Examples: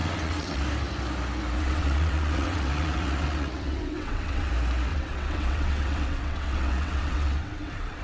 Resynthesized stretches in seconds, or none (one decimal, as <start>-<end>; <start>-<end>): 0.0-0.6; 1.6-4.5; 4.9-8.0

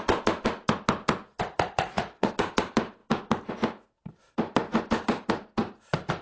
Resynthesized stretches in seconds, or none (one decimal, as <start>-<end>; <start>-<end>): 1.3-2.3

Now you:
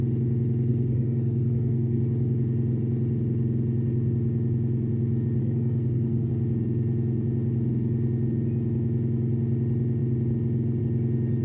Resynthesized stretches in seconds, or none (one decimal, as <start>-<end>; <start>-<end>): 0.7-2.0; 5.4-6.3

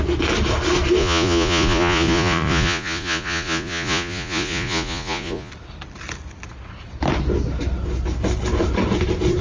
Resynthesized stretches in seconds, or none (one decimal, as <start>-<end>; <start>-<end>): 1.0-5.5

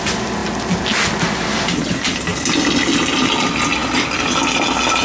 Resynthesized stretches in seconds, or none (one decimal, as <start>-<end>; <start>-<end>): none

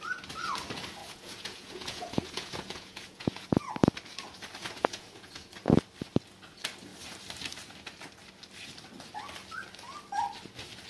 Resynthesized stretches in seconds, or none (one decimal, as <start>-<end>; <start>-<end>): 1.0-3.6; 4.6-5.5

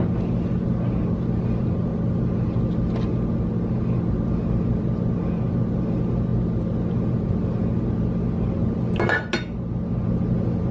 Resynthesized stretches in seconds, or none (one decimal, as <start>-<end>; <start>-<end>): none